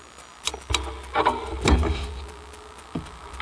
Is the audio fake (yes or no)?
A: no